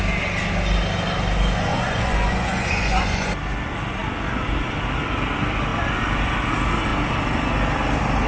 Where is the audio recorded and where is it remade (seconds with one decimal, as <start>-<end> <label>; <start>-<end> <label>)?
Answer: 0.0-1.7 recorded; 1.7-3.3 remade; 3.3-8.3 recorded